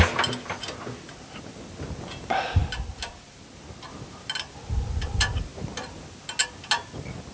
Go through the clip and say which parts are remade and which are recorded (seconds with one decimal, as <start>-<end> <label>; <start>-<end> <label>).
0.0-7.3 recorded